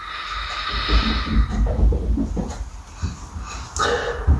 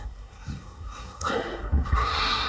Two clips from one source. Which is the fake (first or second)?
second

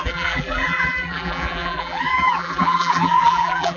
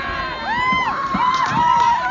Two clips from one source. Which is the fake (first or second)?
first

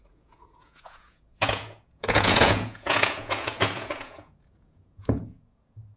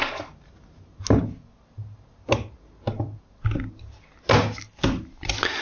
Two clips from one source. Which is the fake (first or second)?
first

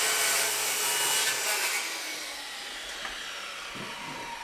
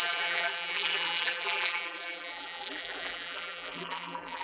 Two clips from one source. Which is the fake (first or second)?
second